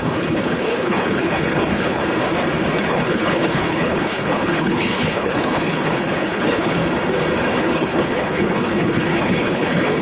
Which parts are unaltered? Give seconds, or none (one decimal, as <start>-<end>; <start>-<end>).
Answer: 2.0-2.9; 6.8-7.6